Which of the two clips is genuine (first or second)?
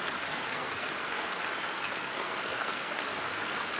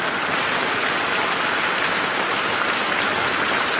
second